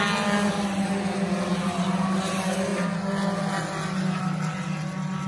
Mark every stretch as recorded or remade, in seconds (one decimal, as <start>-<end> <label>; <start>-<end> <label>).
0.0-5.3 recorded